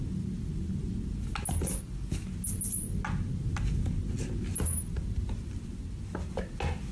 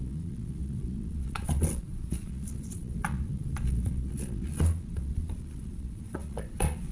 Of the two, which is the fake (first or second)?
second